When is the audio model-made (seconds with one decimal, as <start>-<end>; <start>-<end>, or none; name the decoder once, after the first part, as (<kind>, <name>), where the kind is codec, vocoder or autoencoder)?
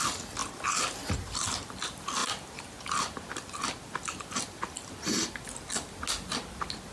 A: 0.4-1.4 (vocoder, BigVGAN v2)